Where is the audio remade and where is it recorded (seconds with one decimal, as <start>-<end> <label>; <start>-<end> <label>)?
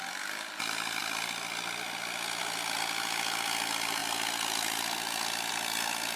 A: 0.0-6.2 recorded